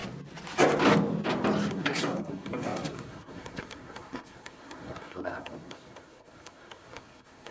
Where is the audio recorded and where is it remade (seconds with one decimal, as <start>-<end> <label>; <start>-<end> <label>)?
0.0-1.7 recorded; 1.7-7.5 remade